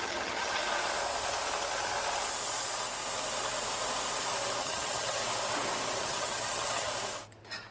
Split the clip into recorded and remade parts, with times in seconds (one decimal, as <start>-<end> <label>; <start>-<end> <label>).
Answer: 0.0-0.6 remade; 0.6-4.6 recorded; 4.6-5.2 remade; 5.2-6.0 recorded; 6.0-6.9 remade; 6.9-7.7 recorded